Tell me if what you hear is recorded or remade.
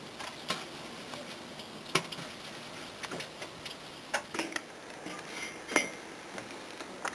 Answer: recorded